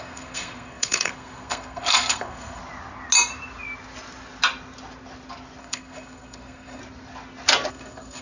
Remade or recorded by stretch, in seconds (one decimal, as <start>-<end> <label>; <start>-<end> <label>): 0.0-2.6 remade; 2.6-5.6 recorded; 5.6-6.8 remade; 6.8-7.7 recorded; 7.7-8.2 remade